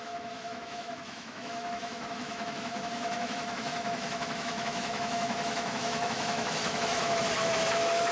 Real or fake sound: fake